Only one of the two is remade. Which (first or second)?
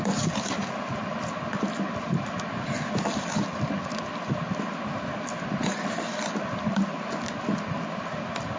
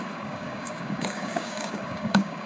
second